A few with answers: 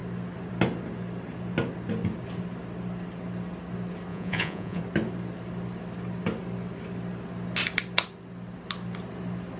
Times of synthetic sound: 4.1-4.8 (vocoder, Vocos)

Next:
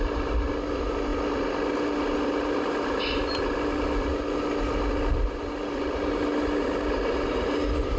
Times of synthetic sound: none

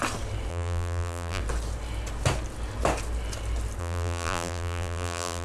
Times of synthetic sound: 0.5-1.4 (vocoder, BigVGAN v2); 3.8-5.4

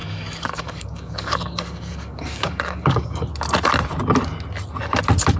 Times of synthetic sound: 0.0-3.2 (codec, DAC)